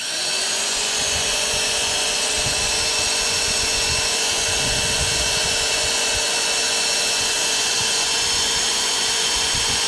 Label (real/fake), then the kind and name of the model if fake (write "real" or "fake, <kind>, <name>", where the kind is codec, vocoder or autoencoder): fake, vocoder, Vocos